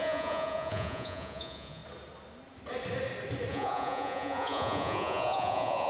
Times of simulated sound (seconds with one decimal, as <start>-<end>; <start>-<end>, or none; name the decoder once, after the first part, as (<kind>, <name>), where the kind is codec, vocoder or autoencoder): 0.0-1.8 (vocoder, Vocos); 3.5-5.9